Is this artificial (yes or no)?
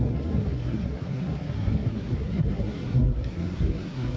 yes